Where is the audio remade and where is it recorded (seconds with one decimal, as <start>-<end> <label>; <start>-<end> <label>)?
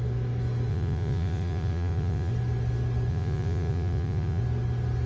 0.0-0.7 recorded; 0.7-2.3 remade; 2.3-3.1 recorded; 3.1-4.4 remade; 4.4-5.1 recorded